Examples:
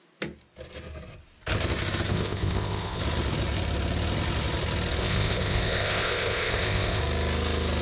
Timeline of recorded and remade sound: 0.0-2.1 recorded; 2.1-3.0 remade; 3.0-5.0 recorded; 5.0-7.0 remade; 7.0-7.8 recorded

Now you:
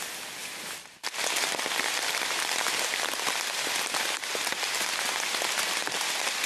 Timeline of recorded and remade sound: 0.0-0.4 recorded; 0.4-4.3 remade; 4.3-5.8 recorded; 5.8-6.5 remade